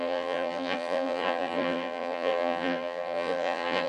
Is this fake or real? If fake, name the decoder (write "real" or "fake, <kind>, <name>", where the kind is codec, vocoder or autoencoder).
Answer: fake, vocoder, BigVGAN v2